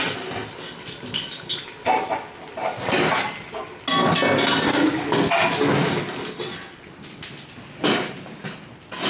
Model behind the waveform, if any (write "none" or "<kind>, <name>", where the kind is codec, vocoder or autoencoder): none